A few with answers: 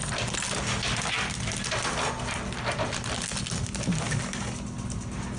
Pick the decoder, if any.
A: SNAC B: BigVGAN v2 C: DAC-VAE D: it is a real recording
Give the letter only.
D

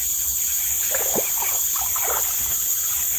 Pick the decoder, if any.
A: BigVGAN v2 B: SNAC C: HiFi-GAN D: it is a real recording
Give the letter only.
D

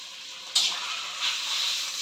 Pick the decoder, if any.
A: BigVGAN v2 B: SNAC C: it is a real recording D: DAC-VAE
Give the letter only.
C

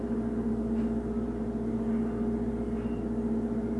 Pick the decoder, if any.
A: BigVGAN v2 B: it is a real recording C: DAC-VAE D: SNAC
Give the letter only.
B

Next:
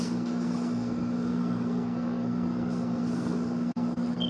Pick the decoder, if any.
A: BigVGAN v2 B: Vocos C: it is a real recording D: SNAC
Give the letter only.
D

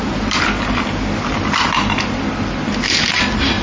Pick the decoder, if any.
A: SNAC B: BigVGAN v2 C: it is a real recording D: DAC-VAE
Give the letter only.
C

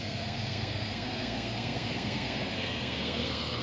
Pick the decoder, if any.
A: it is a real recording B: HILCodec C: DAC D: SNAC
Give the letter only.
D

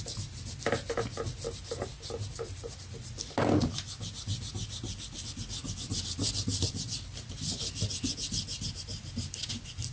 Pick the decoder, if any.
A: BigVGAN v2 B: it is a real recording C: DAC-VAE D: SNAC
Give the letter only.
B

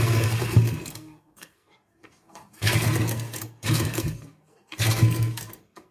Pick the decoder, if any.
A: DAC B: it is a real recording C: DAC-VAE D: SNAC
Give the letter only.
D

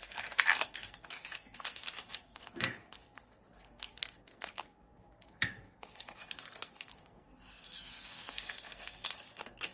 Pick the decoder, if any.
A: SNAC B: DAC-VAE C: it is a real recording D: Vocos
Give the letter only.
A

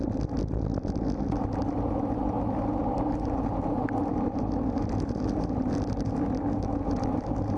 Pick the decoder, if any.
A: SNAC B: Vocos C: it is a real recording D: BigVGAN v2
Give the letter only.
C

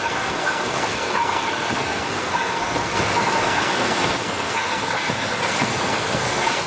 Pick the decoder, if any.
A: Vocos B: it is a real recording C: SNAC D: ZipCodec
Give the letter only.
C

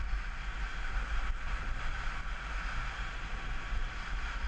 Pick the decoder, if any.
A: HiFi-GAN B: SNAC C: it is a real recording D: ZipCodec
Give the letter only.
C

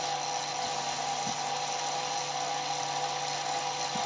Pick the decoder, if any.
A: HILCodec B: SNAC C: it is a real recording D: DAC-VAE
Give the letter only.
C